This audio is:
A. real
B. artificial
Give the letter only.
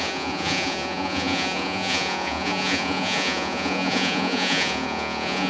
B